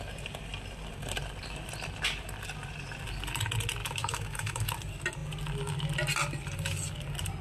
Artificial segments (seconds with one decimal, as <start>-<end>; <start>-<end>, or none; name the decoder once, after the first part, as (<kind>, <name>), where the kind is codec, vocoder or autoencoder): 3.8-4.7 (autoencoder, DAC-VAE)